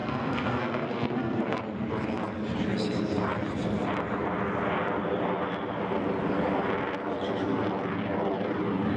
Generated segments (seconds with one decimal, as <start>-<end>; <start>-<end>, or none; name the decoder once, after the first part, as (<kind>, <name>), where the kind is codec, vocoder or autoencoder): 0.0-1.6 (codec, SNAC)